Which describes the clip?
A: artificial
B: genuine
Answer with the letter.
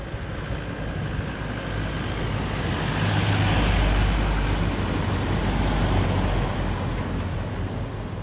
B